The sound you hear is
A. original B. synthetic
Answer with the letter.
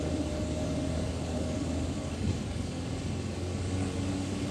B